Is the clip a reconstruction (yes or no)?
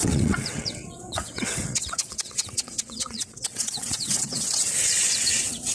yes